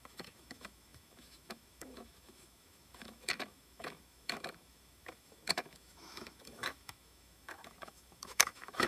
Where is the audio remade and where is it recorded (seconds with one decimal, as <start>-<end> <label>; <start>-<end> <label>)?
0.0-8.9 remade

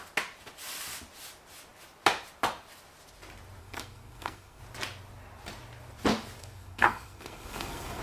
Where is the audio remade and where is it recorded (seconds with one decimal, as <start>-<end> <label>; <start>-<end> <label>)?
0.0-3.6 recorded; 3.6-4.6 remade; 4.6-6.4 recorded; 6.4-8.0 remade

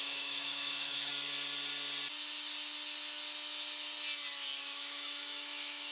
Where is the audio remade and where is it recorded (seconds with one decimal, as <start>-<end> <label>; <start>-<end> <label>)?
0.0-1.1 remade; 1.1-4.6 recorded; 4.6-5.9 remade